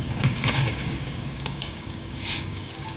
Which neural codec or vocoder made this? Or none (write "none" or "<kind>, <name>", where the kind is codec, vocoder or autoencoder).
codec, DAC